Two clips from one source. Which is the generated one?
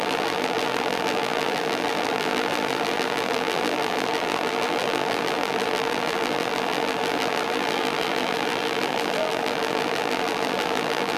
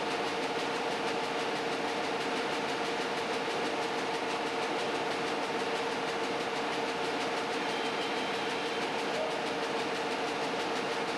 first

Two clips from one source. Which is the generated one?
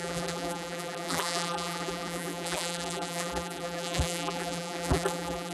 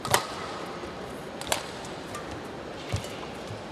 first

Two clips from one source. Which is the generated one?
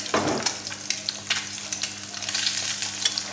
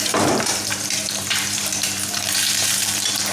second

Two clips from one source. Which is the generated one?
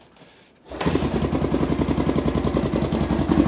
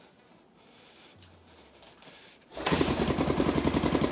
second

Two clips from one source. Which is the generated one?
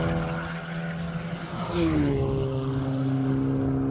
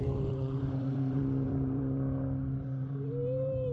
second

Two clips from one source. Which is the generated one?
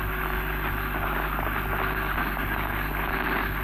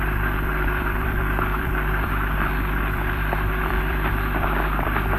second